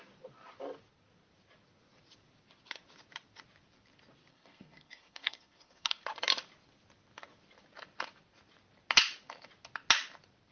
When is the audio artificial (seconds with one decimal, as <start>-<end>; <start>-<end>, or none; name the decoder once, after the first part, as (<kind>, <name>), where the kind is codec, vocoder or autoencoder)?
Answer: 4.3-6.0 (codec, SNAC)